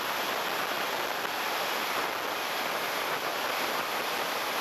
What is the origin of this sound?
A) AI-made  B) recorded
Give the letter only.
B